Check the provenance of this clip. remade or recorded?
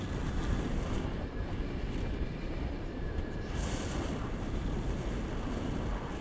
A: recorded